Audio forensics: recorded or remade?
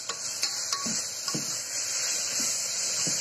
recorded